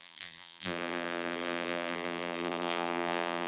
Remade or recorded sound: remade